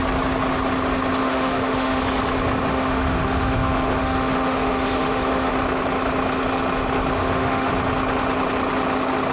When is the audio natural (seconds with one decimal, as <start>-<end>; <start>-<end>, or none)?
0.0-1.2; 2.0-2.7; 5.5-7.2; 7.7-9.3